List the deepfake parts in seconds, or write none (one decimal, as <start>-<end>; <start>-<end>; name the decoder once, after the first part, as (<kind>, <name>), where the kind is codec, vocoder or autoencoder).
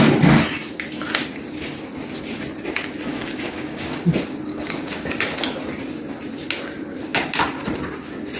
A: 3.1-4.0 (codec, DAC); 4.5-5.1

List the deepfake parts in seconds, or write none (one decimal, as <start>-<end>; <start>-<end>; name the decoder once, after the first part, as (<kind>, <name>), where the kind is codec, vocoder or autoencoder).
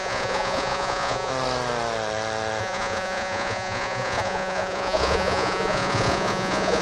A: 0.0-1.3 (vocoder, Vocos); 2.6-6.8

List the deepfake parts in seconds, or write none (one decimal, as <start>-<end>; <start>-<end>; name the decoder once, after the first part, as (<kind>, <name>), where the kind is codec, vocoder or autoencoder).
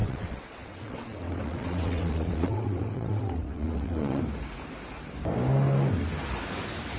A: 0.0-4.2 (vocoder, WaveNeXt)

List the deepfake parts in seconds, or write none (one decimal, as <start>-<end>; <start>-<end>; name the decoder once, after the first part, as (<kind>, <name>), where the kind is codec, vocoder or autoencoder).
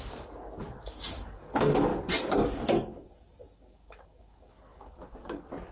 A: 0.0-5.7 (codec, DAC)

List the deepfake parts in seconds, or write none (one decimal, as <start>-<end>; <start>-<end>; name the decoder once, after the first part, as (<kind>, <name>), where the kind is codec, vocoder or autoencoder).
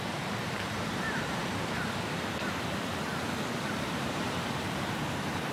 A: 0.0-1.4 (vocoder, BigVGAN v2); 3.7-5.5